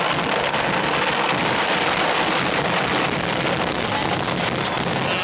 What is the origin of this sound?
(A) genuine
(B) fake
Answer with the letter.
A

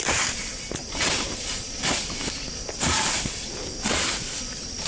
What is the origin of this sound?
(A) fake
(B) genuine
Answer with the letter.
B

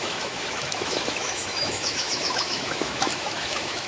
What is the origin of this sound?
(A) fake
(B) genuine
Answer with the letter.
A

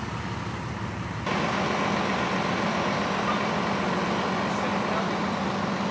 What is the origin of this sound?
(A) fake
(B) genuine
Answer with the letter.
B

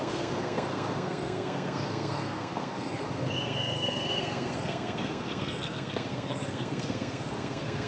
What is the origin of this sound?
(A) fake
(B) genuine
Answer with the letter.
A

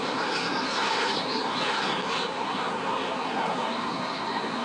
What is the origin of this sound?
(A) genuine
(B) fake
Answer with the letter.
B